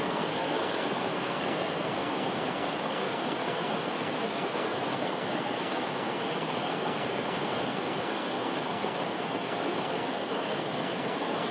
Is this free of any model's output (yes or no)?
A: no